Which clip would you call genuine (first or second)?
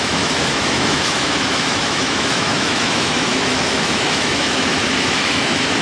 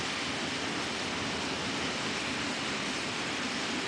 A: second